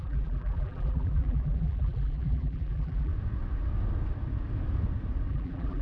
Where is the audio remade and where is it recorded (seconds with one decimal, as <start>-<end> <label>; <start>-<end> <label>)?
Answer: 0.0-3.1 remade; 3.1-5.3 recorded; 5.3-5.8 remade